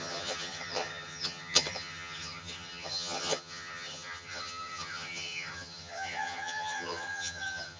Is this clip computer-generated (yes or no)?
yes